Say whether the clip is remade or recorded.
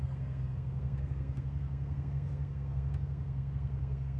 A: remade